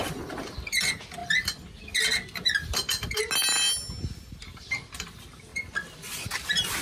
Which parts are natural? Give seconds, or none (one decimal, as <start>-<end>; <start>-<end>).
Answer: 0.0-6.8